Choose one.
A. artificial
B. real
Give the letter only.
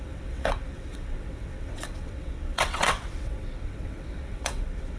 A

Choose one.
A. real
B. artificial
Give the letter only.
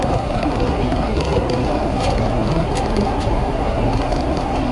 B